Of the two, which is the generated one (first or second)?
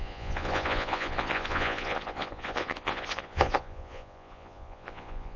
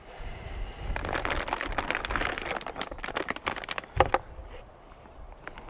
first